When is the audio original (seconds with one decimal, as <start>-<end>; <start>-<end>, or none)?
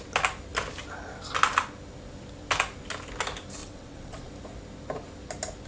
0.0-3.6; 4.3-5.7